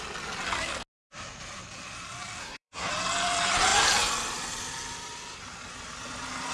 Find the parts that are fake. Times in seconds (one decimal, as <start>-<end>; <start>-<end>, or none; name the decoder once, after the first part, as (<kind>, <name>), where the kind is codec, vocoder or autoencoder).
2.4-2.9 (codec, SNAC)